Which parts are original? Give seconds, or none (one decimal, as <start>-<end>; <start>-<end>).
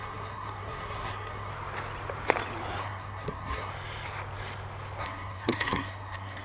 1.5-2.8; 3.7-5.0